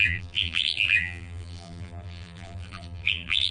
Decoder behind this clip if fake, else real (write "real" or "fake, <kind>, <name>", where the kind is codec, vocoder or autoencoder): fake, vocoder, BigVGAN v2